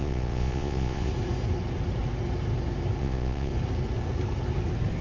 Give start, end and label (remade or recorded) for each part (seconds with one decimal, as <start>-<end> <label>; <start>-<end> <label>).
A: 0.0-1.1 remade; 1.1-3.0 recorded; 3.0-3.5 remade; 3.5-5.0 recorded